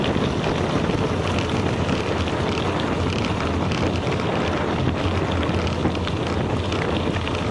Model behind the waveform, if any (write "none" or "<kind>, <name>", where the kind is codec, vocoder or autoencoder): none